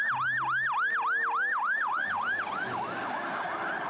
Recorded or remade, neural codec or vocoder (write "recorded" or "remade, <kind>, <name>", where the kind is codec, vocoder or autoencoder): recorded